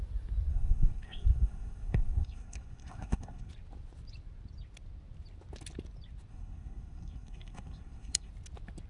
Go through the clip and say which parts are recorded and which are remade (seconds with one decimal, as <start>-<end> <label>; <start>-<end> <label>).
0.0-0.5 recorded; 0.5-3.5 remade; 3.5-6.3 recorded; 6.3-8.3 remade; 8.3-8.9 recorded

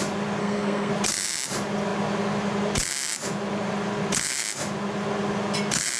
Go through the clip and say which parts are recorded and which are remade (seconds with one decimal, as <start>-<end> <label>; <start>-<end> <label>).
0.0-0.4 recorded; 0.4-0.9 remade; 0.9-6.0 recorded

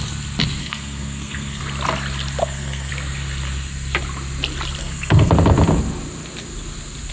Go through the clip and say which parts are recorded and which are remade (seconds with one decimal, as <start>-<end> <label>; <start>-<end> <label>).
0.0-0.6 recorded; 0.6-1.6 remade; 1.6-2.4 recorded; 2.4-2.9 remade; 2.9-4.8 recorded; 4.8-5.3 remade; 5.3-7.1 recorded

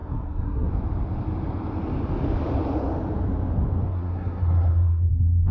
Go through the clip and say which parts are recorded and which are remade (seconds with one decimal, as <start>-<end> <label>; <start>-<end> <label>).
0.0-0.7 remade; 0.7-3.9 recorded; 3.9-5.1 remade; 5.1-5.5 recorded